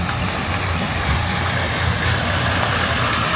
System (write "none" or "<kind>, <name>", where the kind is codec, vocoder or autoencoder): vocoder, BigVGAN v2